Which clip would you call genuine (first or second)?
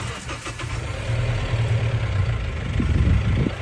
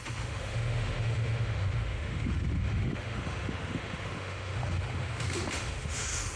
first